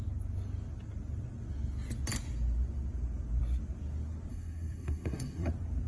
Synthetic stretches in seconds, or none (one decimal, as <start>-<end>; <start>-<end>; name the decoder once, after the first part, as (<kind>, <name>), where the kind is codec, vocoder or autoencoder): 4.3-5.5 (codec, SNAC)

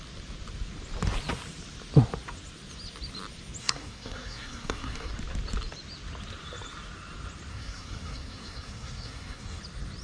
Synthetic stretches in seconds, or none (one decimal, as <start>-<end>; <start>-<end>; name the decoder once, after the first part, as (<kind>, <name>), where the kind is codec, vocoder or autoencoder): 3.6-5.1 (codec, SNAC); 7.5-9.6

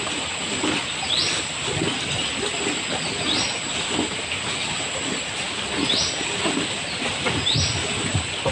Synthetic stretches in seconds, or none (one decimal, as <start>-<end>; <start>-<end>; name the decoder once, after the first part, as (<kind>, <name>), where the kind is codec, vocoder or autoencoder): none

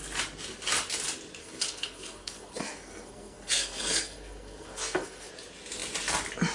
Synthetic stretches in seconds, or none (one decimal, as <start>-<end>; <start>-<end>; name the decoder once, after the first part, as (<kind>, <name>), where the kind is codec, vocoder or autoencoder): 1.4-5.3 (codec, SNAC)

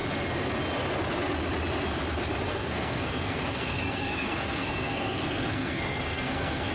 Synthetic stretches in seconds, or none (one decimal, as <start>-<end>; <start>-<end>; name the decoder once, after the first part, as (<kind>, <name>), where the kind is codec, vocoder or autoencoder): 2.5-6.7 (codec, SNAC)